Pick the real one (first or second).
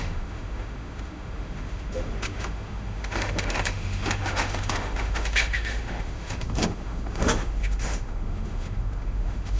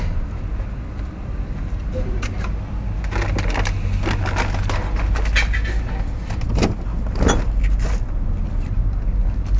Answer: second